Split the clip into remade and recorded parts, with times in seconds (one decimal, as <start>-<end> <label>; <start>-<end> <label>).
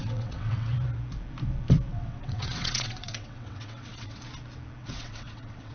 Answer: 0.0-0.7 remade; 0.7-1.9 recorded; 1.9-4.2 remade; 4.2-4.8 recorded; 4.8-5.7 remade